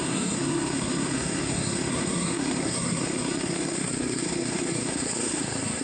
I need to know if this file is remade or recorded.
remade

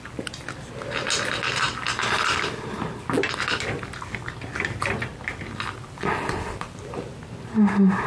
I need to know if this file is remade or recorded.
recorded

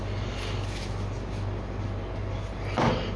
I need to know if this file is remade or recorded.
recorded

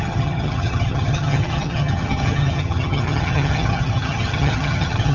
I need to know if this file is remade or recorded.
remade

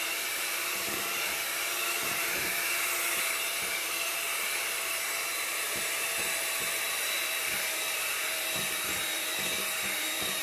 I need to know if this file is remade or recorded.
remade